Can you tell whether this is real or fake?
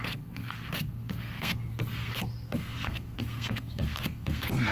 fake